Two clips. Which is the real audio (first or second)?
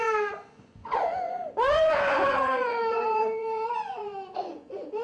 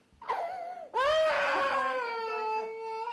second